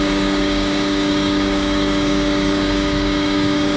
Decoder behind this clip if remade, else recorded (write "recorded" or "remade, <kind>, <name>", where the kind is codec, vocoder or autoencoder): remade, codec, DAC